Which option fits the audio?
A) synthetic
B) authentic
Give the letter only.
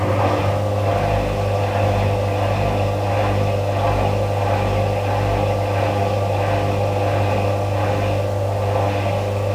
B